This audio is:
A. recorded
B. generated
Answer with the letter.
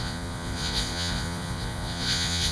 B